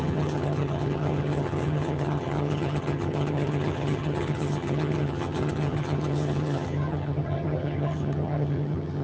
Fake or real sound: fake